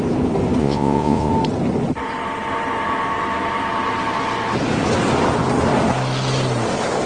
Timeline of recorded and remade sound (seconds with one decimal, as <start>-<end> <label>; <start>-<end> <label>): 0.0-0.6 recorded; 0.6-1.3 remade; 1.3-7.1 recorded